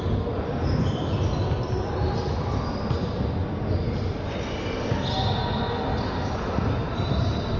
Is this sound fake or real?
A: real